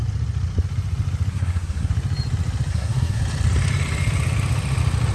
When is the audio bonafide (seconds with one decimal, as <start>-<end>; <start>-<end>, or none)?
0.0-1.3; 1.9-2.7; 3.2-5.1